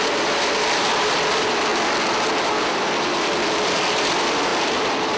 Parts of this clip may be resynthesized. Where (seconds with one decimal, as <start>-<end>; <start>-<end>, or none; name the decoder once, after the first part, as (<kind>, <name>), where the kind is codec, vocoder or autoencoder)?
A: 0.0-1.7 (vocoder, BigVGAN v2); 2.7-5.2